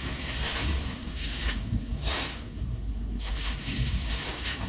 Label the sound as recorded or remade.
remade